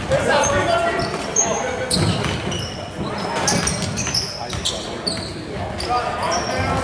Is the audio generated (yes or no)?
no